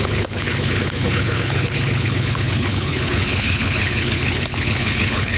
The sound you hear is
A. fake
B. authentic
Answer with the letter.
A